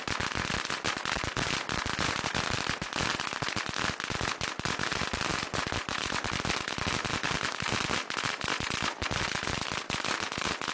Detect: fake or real real